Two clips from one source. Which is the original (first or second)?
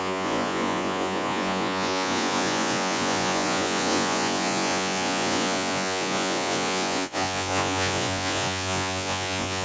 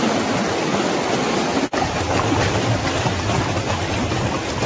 second